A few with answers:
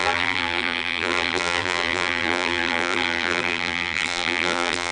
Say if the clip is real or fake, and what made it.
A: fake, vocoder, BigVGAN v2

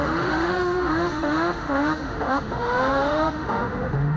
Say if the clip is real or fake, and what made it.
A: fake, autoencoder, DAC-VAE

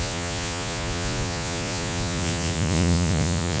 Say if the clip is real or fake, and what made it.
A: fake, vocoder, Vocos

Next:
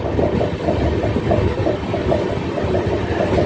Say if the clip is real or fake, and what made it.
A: real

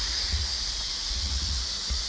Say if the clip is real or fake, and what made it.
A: fake, vocoder, Vocos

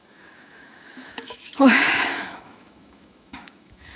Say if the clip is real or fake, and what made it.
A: fake, autoencoder, DAC-VAE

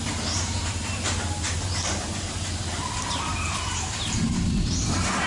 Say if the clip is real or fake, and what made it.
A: fake, vocoder, BigVGAN v2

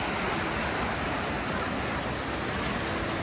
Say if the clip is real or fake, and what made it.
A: real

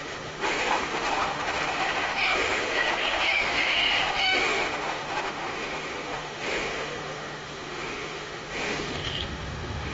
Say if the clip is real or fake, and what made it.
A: fake, autoencoder, DAC-VAE